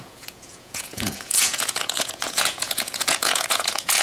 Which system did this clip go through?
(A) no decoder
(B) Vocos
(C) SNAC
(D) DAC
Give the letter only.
B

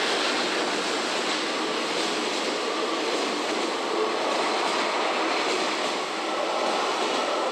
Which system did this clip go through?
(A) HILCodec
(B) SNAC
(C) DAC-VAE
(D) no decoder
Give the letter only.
D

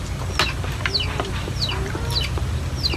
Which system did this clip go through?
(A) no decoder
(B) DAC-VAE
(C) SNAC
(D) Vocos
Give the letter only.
A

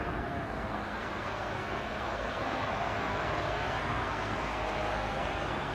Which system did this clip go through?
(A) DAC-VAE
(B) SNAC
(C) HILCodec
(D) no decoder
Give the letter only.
B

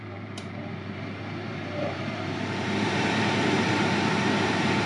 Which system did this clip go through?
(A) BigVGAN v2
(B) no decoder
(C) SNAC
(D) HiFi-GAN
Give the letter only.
A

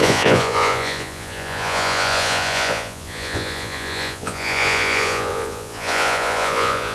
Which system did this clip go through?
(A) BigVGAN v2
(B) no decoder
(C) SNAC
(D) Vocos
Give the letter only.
D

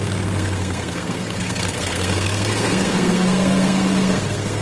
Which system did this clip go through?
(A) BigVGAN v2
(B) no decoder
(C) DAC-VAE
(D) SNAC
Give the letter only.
D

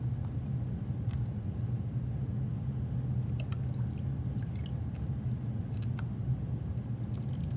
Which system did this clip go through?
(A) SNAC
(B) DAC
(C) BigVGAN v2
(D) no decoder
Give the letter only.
D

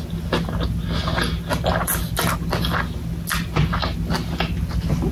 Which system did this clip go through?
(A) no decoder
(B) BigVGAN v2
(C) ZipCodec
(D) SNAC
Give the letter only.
A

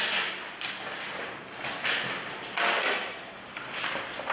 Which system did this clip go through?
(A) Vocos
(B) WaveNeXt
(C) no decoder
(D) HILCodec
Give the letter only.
C